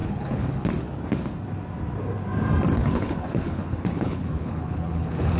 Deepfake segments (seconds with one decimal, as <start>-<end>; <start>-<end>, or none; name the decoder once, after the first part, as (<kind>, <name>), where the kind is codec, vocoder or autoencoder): 0.0-0.7 (codec, HILCodec); 2.8-5.4